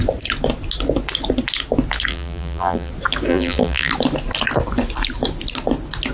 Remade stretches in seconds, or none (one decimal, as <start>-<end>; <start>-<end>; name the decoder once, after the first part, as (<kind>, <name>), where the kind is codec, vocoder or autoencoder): 2.1-2.9 (vocoder, BigVGAN v2); 3.3-3.9